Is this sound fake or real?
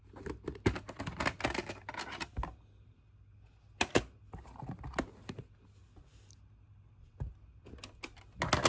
real